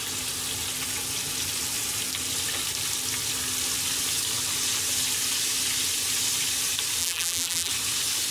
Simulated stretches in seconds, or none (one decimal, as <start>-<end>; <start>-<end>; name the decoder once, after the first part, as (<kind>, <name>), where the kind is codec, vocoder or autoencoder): 7.0-7.7 (vocoder, BigVGAN v2)